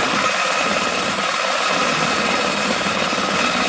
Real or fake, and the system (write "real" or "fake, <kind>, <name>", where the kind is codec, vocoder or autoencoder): real